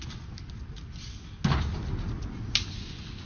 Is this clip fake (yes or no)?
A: no